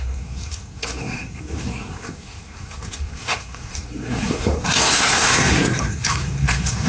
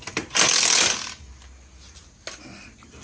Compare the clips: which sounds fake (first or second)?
first